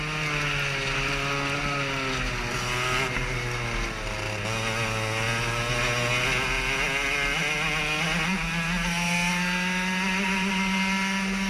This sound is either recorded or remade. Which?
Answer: recorded